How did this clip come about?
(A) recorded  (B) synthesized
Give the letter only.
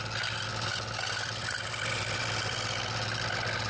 A